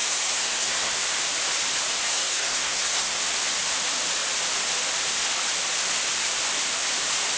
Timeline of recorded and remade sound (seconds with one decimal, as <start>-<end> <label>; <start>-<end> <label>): 0.0-0.9 remade; 0.9-2.1 recorded; 2.1-3.2 remade; 3.2-7.4 recorded